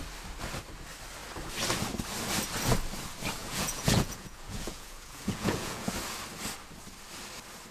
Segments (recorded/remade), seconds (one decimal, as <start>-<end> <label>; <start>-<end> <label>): 0.0-3.4 recorded; 3.4-5.9 remade; 5.9-7.7 recorded